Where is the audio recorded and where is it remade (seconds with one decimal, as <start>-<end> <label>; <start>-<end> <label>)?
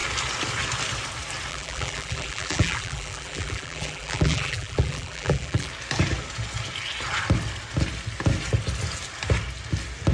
0.0-1.5 recorded; 1.5-5.7 remade; 5.7-10.1 recorded